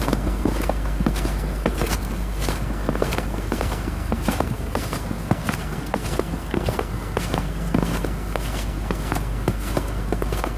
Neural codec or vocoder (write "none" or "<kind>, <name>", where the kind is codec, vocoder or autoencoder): codec, SNAC